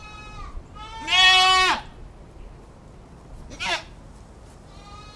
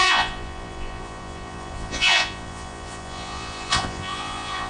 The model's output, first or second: second